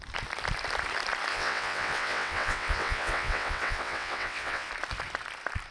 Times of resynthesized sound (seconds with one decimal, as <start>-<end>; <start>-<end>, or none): 1.3-4.7